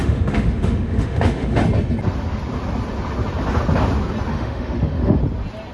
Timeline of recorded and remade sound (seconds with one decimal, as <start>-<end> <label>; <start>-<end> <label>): 0.0-1.6 remade; 1.6-4.3 recorded; 4.3-5.2 remade; 5.2-5.7 recorded